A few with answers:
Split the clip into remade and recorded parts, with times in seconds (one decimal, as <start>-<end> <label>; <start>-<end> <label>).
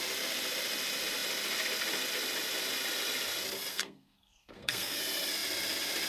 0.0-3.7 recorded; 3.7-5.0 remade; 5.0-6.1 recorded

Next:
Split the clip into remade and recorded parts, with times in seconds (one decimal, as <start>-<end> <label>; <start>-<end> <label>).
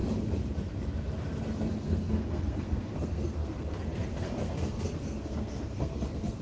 0.0-1.7 recorded; 1.7-6.4 remade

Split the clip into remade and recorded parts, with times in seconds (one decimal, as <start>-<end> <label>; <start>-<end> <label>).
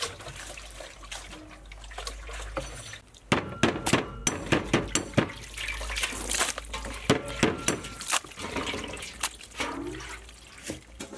0.0-11.2 recorded